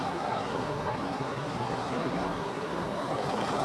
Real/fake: fake